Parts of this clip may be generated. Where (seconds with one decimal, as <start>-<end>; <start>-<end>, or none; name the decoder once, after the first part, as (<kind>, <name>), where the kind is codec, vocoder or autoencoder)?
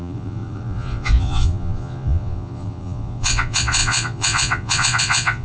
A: 0.0-5.4 (vocoder, Vocos)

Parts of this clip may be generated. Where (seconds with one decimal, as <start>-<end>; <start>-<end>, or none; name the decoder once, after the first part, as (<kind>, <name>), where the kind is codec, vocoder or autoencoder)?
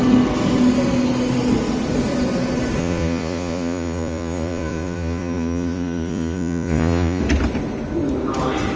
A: 2.8-7.2 (vocoder, Vocos)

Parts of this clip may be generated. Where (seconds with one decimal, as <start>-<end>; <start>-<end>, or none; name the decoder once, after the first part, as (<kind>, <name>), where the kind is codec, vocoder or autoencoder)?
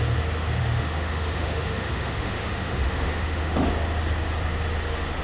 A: 0.6-3.7 (autoencoder, DAC-VAE)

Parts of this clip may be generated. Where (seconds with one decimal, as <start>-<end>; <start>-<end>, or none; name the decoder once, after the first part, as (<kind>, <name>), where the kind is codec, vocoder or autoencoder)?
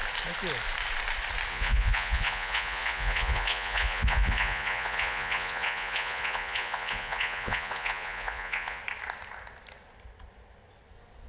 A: 1.5-8.8 (vocoder, Vocos)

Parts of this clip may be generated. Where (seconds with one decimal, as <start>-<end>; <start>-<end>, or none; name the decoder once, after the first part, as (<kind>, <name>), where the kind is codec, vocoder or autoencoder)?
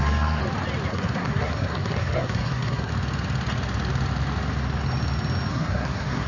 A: 0.0-0.4 (codec, SNAC); 0.9-2.9; 5.5-6.3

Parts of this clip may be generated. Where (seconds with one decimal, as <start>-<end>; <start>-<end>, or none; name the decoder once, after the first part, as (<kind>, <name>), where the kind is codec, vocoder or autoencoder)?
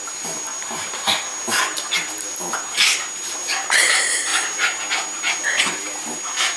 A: none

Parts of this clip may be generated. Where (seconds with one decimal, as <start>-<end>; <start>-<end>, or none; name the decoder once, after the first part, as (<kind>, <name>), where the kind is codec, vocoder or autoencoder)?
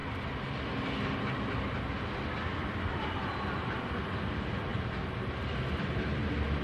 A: 4.0-4.7 (vocoder, BigVGAN v2)